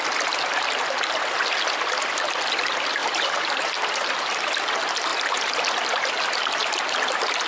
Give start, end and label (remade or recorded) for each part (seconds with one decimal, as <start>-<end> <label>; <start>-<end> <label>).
0.0-3.0 recorded; 3.0-4.5 remade; 4.5-7.5 recorded